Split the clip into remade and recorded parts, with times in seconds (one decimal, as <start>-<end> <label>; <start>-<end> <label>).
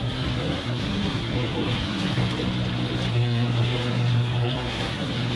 0.0-2.2 remade; 2.2-3.1 recorded; 3.1-5.4 remade